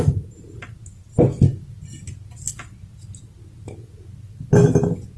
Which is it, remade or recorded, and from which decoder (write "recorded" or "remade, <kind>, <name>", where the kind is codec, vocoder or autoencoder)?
recorded